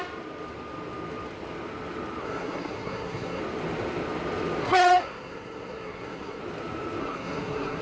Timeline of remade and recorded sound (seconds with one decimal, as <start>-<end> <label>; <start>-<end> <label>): 0.0-2.2 recorded; 2.2-3.4 remade; 3.4-4.6 recorded; 4.6-6.4 remade; 6.4-7.0 recorded; 7.0-7.8 remade